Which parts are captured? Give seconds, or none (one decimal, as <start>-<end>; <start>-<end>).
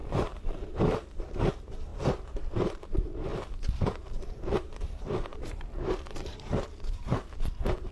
none